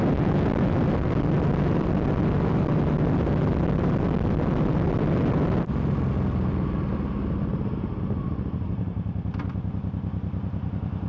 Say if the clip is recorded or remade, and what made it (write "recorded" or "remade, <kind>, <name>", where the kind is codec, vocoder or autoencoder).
recorded